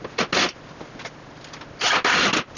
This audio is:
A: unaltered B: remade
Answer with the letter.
A